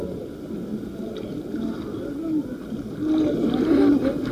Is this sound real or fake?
real